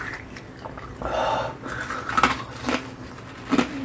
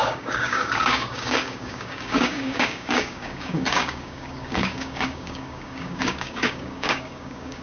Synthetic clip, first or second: second